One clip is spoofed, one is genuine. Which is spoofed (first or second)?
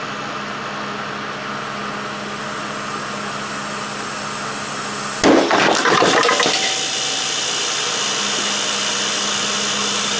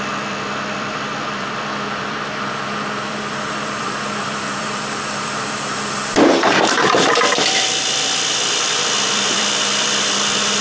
second